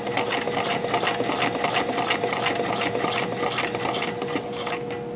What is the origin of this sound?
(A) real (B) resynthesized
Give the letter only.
A